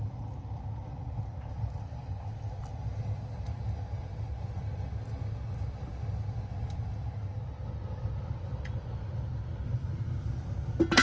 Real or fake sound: real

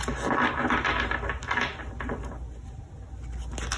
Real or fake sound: real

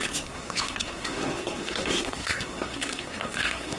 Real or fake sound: fake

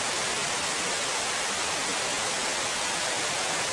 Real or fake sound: real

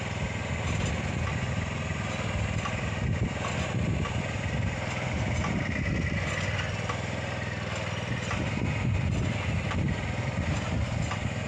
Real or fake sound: real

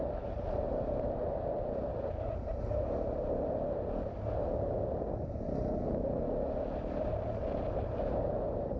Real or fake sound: real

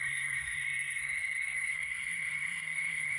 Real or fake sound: fake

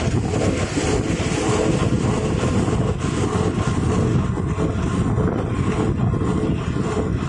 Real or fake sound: real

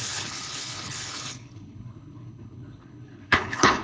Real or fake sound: fake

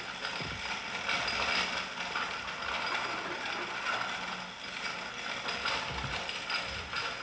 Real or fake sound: real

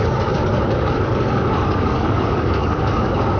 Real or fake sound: fake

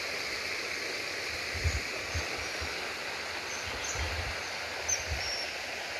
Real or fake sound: real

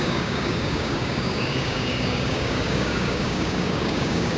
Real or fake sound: fake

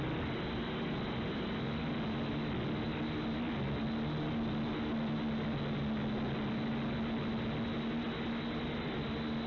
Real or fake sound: real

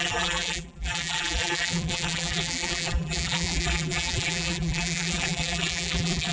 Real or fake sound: fake